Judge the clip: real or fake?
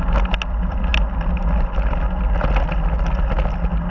real